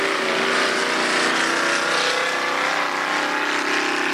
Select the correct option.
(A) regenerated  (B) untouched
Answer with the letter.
B